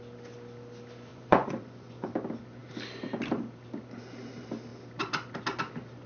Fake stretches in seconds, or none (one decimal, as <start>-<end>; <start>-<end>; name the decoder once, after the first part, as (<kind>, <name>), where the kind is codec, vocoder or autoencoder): 1.1-2.1 (vocoder, Vocos)